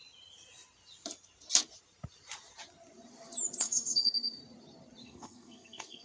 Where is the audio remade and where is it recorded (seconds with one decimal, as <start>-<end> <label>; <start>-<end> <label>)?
0.0-3.6 recorded; 3.6-4.4 remade; 4.4-5.0 recorded; 5.0-6.0 remade